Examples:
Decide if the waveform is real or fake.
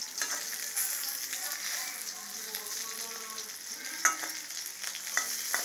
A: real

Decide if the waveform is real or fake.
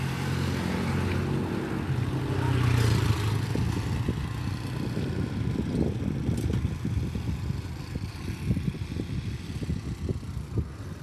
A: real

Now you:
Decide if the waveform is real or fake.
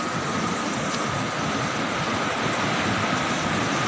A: real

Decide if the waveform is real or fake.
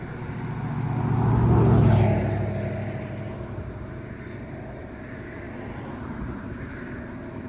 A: real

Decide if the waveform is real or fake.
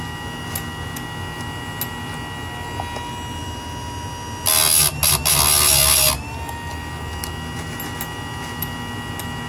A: real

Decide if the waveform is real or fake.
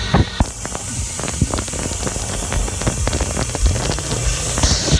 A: real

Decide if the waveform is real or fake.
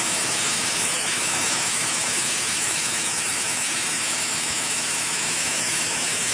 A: fake